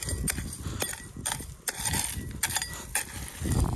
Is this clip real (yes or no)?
no